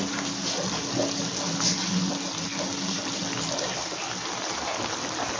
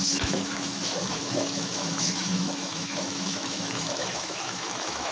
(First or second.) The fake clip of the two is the second